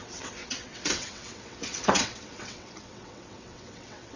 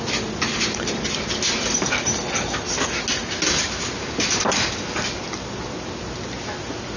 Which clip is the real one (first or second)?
second